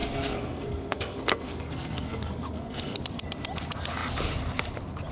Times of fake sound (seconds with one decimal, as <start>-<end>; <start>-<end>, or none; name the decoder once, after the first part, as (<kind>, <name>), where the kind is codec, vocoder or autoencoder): 0.0-3.0 (codec, SNAC)